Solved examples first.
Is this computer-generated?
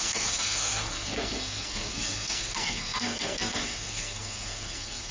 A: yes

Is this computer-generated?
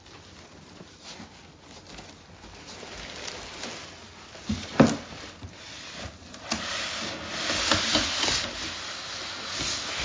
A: no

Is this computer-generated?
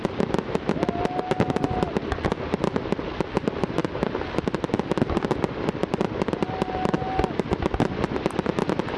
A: no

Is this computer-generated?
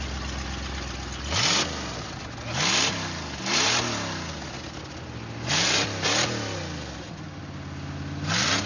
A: no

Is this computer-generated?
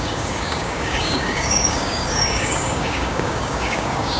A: yes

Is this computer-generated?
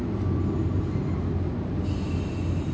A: no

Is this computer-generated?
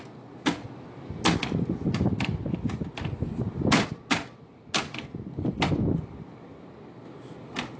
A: no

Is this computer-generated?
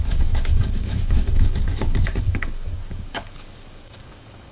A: yes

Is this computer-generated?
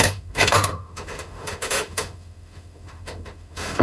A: yes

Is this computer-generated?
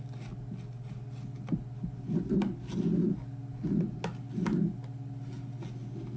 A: no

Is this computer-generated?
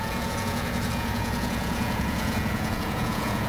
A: yes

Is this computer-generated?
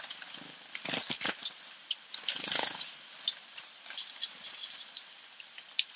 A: no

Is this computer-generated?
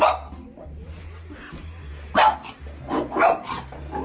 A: no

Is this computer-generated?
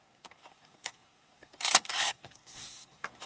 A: yes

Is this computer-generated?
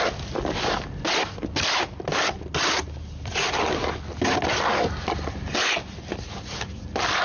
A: no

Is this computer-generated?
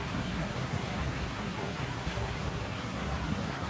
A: yes